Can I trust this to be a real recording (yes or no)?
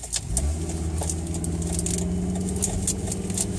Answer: yes